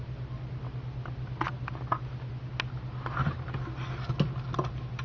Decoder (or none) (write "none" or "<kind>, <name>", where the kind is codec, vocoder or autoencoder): none